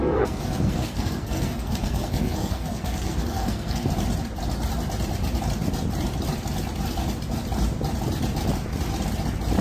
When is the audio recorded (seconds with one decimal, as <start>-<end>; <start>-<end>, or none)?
3.9-9.6

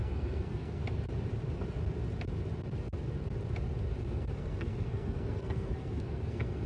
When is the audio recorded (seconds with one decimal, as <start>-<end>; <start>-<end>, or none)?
0.8-4.0

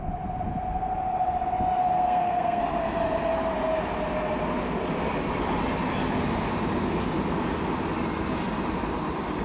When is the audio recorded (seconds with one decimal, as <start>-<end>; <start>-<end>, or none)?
0.0-1.8; 2.6-9.4

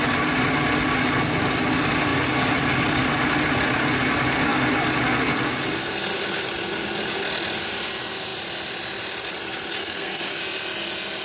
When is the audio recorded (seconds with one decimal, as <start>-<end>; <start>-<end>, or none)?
0.0-9.8; 10.4-11.2

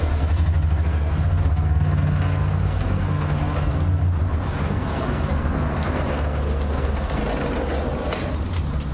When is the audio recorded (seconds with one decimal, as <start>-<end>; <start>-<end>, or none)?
4.0-4.5; 7.2-8.9

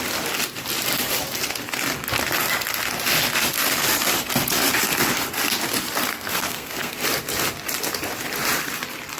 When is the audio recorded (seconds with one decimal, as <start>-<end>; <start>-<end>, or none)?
0.0-6.1; 6.9-9.2